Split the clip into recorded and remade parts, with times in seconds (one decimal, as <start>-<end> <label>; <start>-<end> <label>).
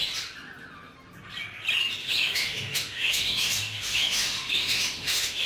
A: 0.0-2.0 recorded; 2.0-5.5 remade